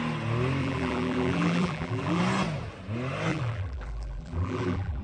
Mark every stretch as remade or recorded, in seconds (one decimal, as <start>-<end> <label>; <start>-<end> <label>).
0.0-0.6 recorded; 0.6-2.2 remade; 2.2-3.3 recorded; 3.3-5.0 remade